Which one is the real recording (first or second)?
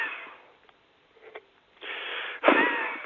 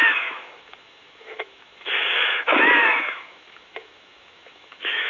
first